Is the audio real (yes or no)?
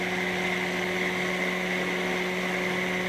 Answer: yes